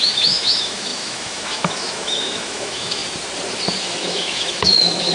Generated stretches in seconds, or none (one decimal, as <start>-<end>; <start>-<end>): 0.0-3.0; 3.8-5.1